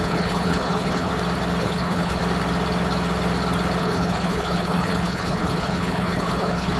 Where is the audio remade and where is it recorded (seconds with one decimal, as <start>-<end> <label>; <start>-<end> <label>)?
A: 0.0-1.1 remade; 1.1-1.6 recorded; 1.6-2.2 remade; 2.2-3.8 recorded; 3.8-6.8 remade